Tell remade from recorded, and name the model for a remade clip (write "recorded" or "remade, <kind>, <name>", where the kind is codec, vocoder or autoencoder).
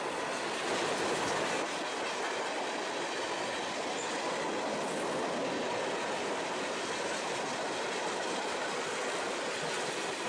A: recorded